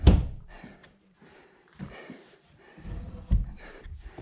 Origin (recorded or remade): remade